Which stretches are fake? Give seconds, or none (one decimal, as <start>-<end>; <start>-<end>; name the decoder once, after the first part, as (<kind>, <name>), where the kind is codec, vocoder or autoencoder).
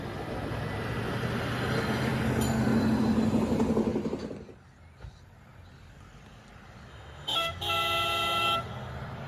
6.9-7.5 (autoencoder, DAC-VAE)